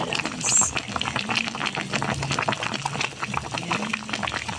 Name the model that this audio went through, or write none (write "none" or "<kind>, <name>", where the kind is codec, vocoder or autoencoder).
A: none